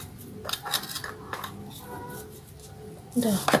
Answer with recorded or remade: recorded